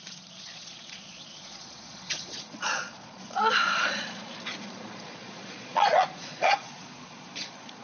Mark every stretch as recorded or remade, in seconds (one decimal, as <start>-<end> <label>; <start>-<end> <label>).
0.0-7.8 remade